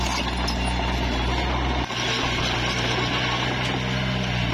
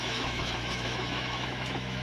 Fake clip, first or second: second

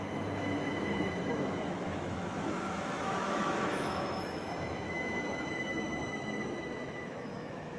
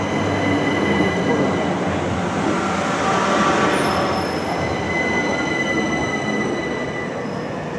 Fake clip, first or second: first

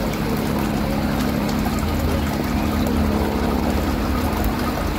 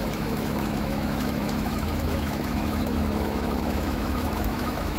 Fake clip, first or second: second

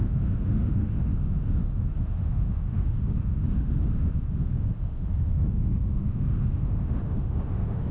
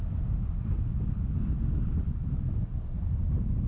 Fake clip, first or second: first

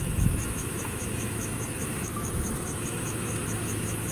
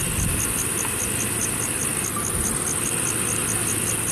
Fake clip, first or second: first